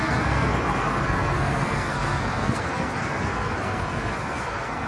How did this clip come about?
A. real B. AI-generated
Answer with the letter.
B